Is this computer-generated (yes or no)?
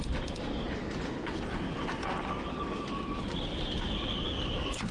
no